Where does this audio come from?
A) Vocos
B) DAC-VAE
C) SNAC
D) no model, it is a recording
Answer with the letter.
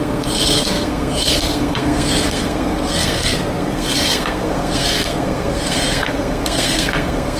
C